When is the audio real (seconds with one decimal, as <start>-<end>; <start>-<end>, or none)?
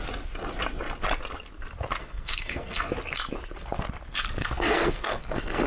0.0-2.0; 2.8-4.4